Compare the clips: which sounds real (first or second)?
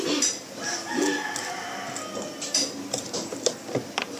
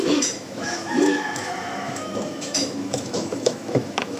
first